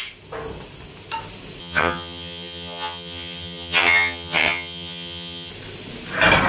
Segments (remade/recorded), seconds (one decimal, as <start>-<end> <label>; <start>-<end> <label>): 0.0-1.6 recorded; 1.6-5.5 remade; 5.5-6.5 recorded